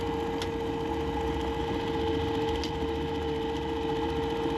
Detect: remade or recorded recorded